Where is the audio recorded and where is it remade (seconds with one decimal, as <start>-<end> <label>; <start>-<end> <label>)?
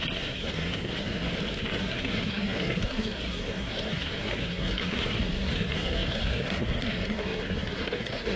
0.0-1.3 remade; 1.3-1.8 recorded; 1.8-8.4 remade